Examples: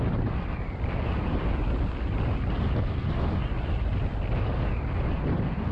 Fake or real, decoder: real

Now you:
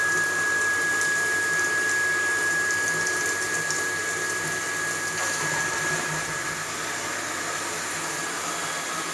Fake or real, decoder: real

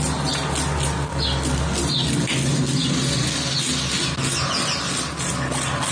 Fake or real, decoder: real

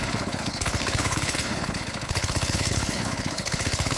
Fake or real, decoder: fake, codec, HILCodec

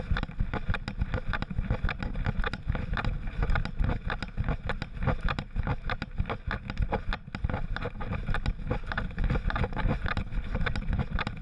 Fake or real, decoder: real